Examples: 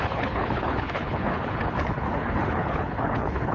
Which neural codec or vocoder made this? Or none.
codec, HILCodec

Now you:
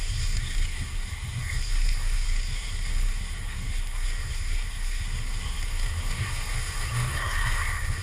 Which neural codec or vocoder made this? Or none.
codec, SNAC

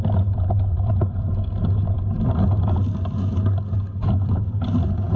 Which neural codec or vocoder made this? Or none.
none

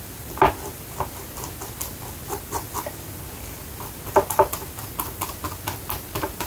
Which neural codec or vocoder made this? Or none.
none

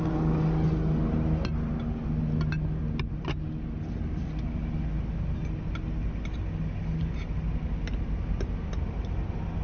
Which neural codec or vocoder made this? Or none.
none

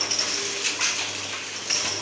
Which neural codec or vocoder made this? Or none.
none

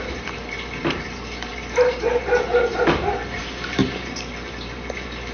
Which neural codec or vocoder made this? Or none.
vocoder, BigVGAN v2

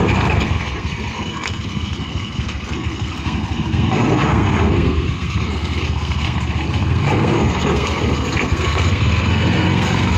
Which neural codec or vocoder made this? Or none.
codec, SNAC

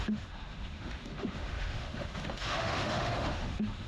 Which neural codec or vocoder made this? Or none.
autoencoder, DAC-VAE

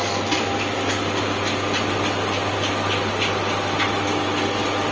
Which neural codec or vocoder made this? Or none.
none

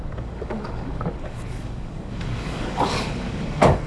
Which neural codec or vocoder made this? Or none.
codec, DAC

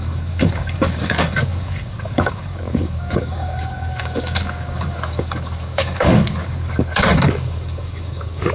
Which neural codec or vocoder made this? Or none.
codec, DAC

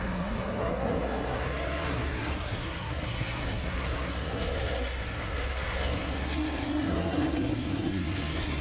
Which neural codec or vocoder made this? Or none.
codec, SNAC